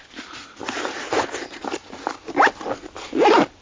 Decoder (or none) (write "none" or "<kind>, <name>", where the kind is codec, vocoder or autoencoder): none